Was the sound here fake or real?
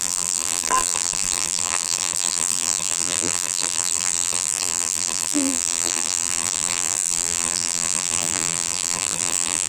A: fake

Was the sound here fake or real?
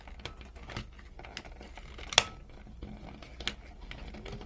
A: real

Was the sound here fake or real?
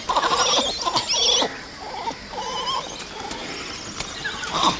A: real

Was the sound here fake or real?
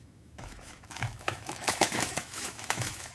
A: fake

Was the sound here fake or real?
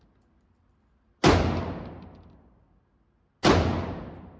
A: real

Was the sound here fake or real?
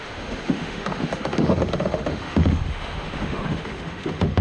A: fake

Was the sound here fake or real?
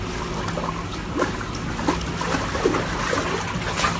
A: real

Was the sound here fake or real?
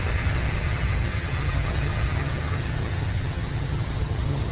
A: fake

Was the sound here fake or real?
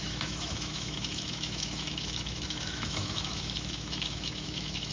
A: fake